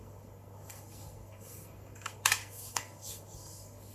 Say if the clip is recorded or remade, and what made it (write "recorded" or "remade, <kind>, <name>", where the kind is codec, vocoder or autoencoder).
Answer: remade, codec, SNAC